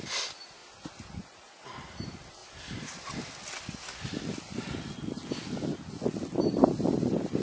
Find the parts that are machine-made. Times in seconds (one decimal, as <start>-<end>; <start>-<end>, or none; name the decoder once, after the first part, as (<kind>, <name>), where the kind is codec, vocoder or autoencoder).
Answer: 2.4-3.0 (vocoder, BigVGAN v2)